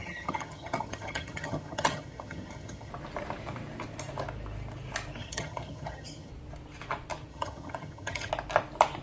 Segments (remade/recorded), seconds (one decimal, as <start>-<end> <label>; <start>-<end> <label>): 0.0-2.9 remade; 2.9-5.2 recorded; 5.2-6.3 remade; 6.3-7.3 recorded; 7.3-8.3 remade; 8.3-9.0 recorded